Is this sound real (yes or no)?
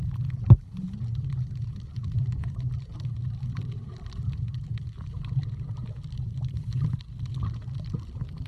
yes